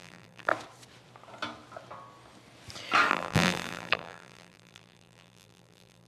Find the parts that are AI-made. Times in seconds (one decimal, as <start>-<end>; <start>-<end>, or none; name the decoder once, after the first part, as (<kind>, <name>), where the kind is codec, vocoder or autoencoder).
0.0-0.5 (vocoder, BigVGAN v2); 3.1-6.1